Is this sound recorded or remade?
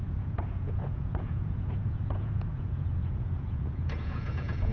remade